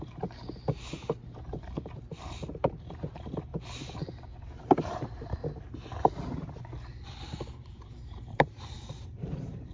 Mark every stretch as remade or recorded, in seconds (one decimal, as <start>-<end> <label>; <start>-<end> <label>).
0.0-3.5 remade; 3.5-4.2 recorded; 4.2-5.4 remade; 5.4-6.9 recorded; 6.9-9.7 remade